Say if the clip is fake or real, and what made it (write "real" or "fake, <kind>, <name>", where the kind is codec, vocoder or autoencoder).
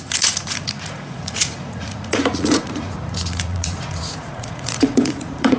fake, vocoder, Vocos